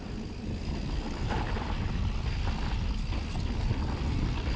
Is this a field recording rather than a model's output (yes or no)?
yes